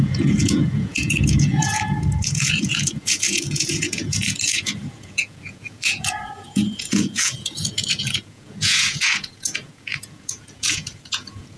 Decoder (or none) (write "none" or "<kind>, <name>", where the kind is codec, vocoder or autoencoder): vocoder, Vocos